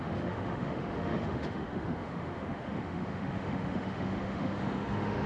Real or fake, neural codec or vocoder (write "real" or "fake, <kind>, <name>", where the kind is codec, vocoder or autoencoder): fake, autoencoder, DAC-VAE